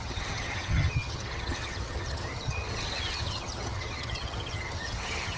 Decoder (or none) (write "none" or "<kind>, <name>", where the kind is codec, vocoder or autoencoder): vocoder, HiFi-GAN